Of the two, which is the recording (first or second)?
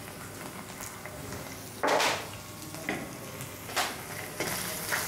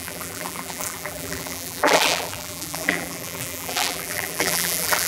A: first